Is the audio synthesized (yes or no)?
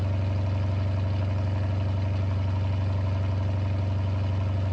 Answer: no